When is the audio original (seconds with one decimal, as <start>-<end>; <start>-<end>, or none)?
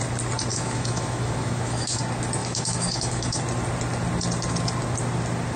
0.0-0.5; 2.0-2.4; 3.4-5.6